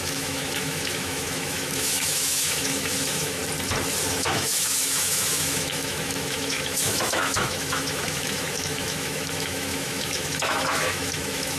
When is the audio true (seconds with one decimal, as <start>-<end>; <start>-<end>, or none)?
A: 3.4-4.1